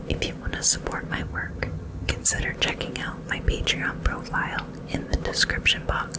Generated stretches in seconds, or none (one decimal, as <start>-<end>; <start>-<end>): 1.2-2.4